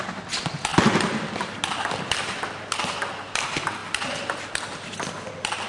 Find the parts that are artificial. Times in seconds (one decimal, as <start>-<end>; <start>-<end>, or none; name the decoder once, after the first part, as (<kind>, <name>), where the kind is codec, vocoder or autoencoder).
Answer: none